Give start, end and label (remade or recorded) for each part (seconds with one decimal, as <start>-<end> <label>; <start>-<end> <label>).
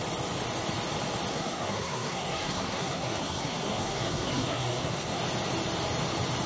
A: 0.0-1.3 recorded; 1.3-5.2 remade; 5.2-6.5 recorded